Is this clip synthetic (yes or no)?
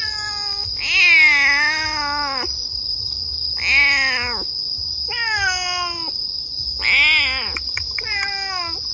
no